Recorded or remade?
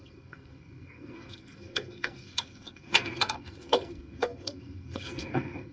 remade